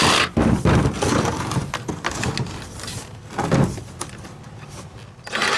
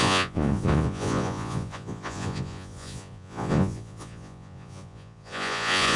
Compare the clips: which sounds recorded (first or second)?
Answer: first